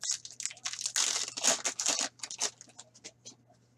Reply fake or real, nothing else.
real